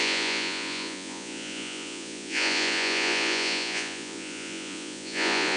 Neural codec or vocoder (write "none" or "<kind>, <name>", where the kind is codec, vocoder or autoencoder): vocoder, Vocos